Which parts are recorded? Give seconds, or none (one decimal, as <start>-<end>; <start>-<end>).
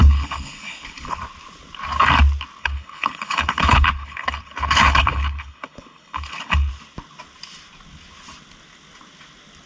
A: 1.2-2.6; 6.7-9.7